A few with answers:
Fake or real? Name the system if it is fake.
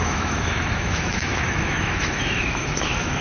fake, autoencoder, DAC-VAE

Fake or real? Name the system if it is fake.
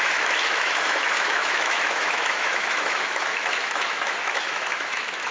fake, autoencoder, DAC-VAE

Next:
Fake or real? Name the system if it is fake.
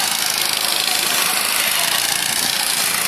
real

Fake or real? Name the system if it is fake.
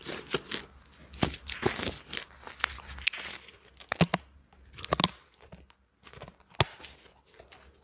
real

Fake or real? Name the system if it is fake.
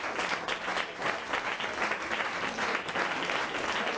real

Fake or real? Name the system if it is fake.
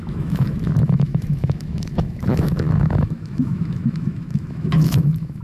fake, autoencoder, DAC-VAE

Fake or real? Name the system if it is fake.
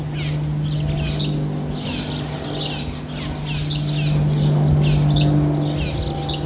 real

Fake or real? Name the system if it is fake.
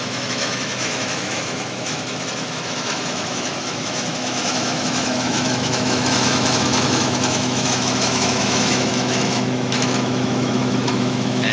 fake, autoencoder, DAC-VAE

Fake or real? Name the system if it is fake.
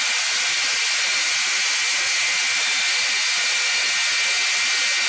real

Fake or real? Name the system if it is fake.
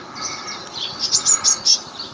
real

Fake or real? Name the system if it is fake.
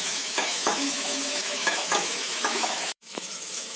fake, autoencoder, DAC-VAE